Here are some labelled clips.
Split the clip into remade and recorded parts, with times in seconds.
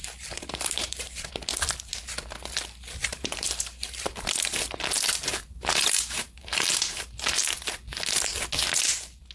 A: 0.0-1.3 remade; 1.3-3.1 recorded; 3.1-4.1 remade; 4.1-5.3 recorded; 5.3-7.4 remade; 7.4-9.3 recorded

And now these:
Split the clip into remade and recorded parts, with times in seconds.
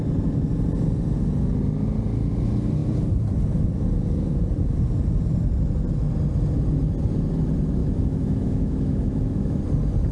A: 0.0-7.8 recorded; 7.8-9.6 remade; 9.6-10.1 recorded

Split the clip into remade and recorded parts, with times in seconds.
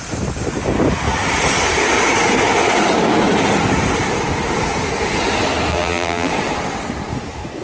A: 0.0-5.7 recorded; 5.7-6.3 remade; 6.3-7.6 recorded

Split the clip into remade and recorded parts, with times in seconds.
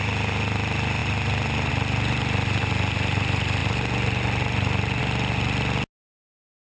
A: 0.0-6.7 recorded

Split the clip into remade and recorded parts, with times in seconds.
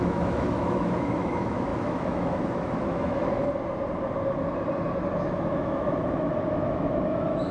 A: 0.0-3.4 remade; 3.4-5.1 recorded; 5.1-7.5 remade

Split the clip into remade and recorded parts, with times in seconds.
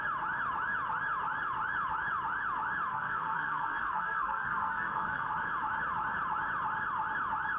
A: 0.0-2.9 recorded; 2.9-5.3 remade; 5.3-7.6 recorded